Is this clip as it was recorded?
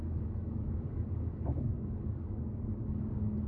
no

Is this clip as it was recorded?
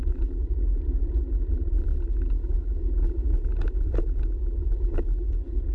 yes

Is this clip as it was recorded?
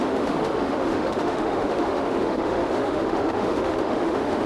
no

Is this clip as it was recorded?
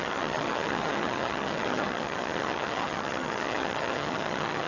no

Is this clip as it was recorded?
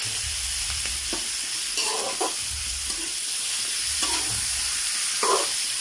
yes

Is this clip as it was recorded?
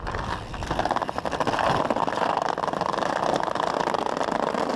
yes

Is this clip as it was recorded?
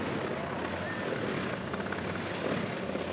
yes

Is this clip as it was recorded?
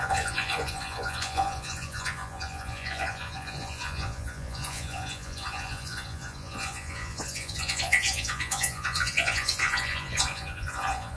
no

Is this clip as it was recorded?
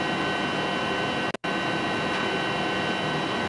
yes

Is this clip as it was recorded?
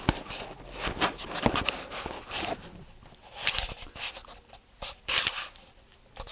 yes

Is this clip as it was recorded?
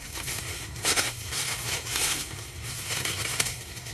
no